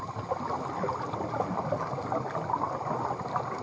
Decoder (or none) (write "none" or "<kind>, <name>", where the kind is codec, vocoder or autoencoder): none